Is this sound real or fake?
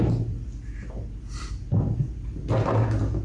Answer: real